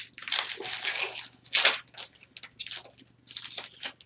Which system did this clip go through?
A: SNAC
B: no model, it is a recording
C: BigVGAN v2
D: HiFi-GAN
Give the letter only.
B